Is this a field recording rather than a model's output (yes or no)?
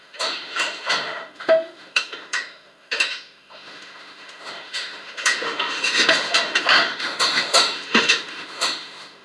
no